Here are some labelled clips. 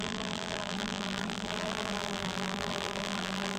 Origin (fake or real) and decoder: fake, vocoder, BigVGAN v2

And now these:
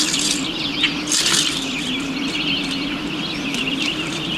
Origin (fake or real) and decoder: real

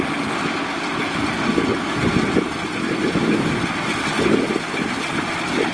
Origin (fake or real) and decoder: real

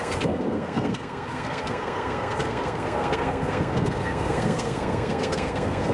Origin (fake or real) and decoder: fake, codec, SNAC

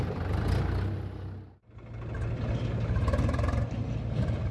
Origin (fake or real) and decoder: real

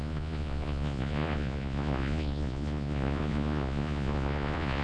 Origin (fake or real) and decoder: fake, vocoder, Vocos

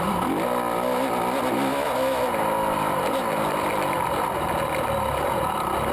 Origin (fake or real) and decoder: real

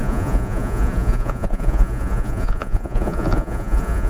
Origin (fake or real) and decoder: fake, vocoder, Vocos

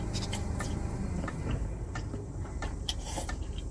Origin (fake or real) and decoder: fake, vocoder, BigVGAN v2